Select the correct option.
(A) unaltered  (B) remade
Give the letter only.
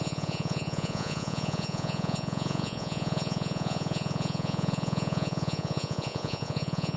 B